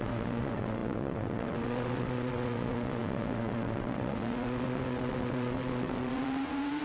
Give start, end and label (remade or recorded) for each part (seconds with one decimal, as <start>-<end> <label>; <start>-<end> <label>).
0.0-6.8 remade